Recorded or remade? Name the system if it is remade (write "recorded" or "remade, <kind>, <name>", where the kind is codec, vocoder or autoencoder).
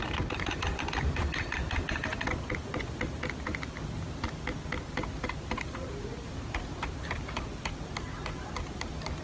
recorded